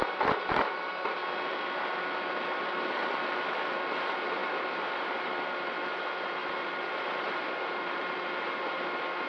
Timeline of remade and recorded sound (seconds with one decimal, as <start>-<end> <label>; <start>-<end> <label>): 0.0-1.2 remade; 1.2-2.6 recorded; 2.6-3.0 remade; 3.0-4.0 recorded; 4.0-9.3 remade